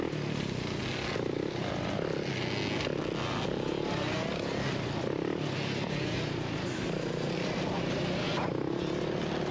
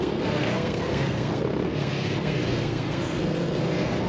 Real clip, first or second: first